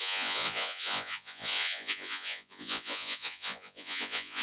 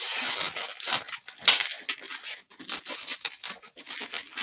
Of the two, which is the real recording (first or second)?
second